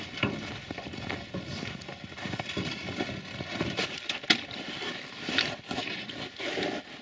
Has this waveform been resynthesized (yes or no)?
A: no